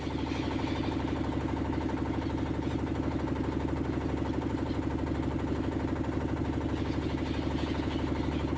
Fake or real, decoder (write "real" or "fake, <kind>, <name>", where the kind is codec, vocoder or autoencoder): real